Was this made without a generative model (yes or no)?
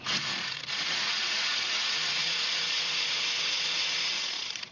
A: no